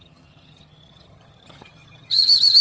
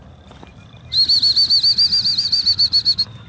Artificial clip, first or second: first